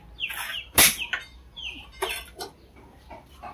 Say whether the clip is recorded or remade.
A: recorded